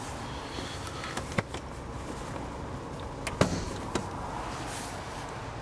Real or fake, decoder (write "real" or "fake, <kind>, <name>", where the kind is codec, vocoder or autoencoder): real